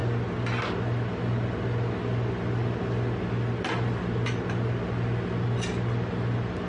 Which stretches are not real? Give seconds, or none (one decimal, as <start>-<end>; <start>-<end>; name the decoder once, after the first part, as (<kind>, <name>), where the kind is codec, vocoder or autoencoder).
none